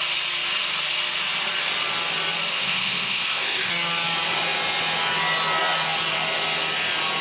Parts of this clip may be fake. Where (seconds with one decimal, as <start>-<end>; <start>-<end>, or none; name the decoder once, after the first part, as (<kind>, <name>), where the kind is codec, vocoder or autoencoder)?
2.5-3.7 (codec, ZipCodec)